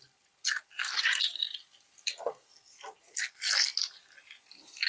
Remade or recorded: recorded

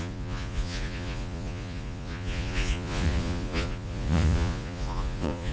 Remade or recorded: remade